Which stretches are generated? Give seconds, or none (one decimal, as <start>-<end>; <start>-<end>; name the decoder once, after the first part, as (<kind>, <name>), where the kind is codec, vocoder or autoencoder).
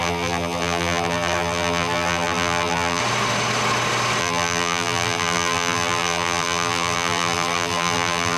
0.0-3.0 (vocoder, BigVGAN v2); 4.2-8.4